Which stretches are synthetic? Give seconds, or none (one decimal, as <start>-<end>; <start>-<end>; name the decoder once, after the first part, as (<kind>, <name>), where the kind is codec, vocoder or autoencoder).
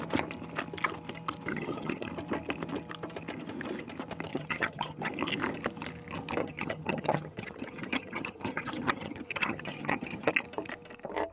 1.5-2.1 (vocoder, HiFi-GAN); 4.3-5.1; 6.4-10.3